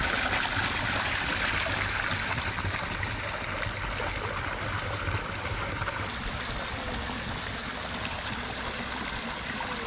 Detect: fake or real real